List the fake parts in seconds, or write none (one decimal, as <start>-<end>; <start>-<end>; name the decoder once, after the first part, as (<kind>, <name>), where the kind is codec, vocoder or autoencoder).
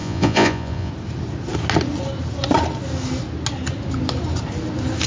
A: 0.0-0.9 (vocoder, Vocos)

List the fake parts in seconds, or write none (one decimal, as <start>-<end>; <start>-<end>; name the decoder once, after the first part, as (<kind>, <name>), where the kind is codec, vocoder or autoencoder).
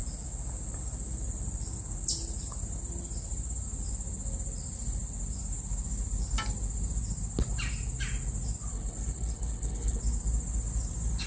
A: 8.7-10.0 (codec, HILCodec)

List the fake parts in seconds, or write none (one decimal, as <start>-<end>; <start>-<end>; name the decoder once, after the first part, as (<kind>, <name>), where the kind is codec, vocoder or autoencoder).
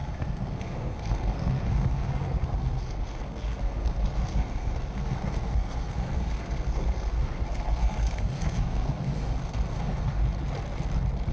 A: 0.0-10.2 (codec, SNAC)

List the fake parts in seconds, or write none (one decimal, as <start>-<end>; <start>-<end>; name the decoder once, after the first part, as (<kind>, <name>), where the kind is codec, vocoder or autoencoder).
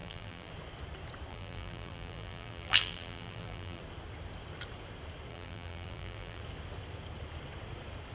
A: 0.0-0.5 (vocoder, BigVGAN v2); 1.3-3.8; 5.3-6.4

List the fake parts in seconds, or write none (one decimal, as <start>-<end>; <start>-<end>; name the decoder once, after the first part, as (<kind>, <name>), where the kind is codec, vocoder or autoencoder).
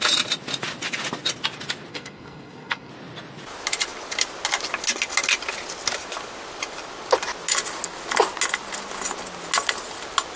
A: 1.9-2.9 (codec, SNAC)